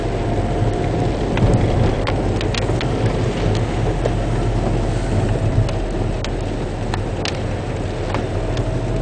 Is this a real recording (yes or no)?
yes